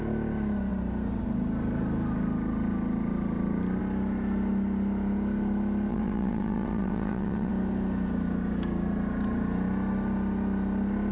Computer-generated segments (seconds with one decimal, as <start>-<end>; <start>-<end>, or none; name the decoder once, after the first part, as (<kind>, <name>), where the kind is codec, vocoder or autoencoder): 5.9-7.5 (vocoder, WaveNeXt)